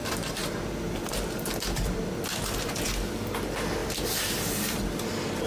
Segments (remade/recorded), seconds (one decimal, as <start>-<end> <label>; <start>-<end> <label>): 0.0-5.5 recorded